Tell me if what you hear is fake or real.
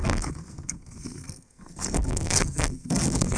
fake